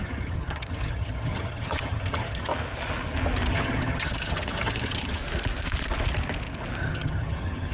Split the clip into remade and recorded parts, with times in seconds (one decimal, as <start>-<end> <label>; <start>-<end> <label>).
0.0-2.5 remade; 2.5-3.5 recorded; 3.5-5.2 remade; 5.2-6.8 recorded; 6.8-7.7 remade